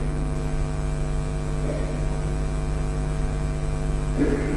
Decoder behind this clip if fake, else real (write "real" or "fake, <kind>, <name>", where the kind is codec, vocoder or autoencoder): real